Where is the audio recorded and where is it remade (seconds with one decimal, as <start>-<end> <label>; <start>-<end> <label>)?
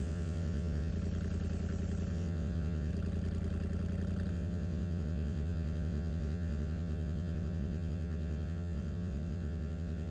0.0-0.9 remade; 0.9-2.1 recorded; 2.1-2.9 remade; 2.9-4.3 recorded; 4.3-10.1 remade